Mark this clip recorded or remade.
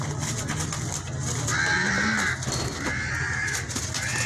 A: recorded